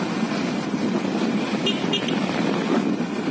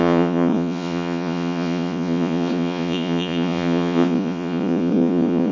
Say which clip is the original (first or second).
first